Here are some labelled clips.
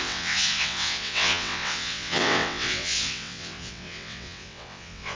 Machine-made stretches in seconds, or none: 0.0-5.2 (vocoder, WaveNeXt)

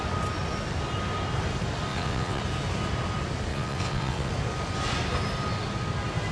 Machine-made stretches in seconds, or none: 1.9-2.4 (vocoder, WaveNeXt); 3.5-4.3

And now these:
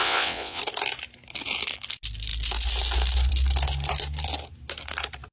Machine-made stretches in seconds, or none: 0.0-0.6 (vocoder, WaveNeXt)

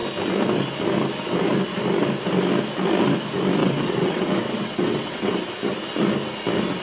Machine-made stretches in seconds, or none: 3.6-5.3 (vocoder, WaveNeXt)